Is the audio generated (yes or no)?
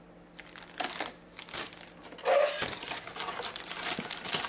no